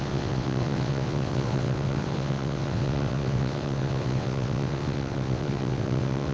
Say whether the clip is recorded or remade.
remade